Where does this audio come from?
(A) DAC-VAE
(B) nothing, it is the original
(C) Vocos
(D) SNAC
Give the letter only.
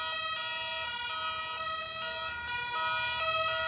B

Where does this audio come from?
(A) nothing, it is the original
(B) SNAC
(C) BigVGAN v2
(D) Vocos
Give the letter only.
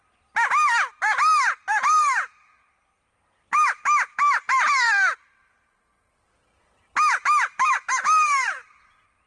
A